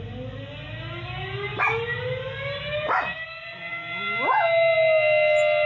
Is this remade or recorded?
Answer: recorded